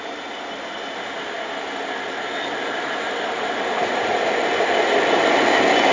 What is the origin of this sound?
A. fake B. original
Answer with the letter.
B